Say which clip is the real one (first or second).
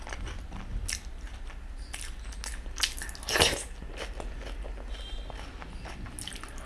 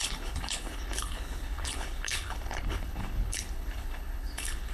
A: first